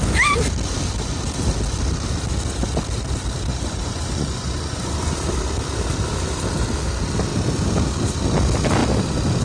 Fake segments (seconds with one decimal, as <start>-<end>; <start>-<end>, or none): 3.5-5.1